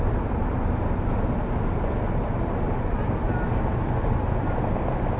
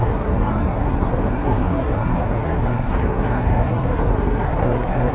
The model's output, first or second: second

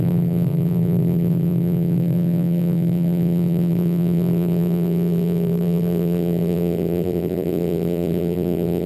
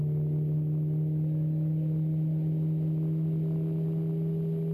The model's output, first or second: first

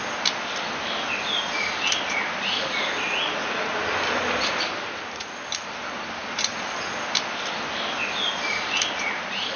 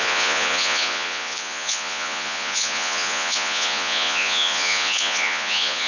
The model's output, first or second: second